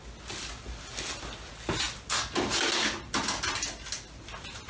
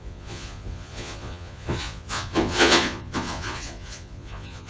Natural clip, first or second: first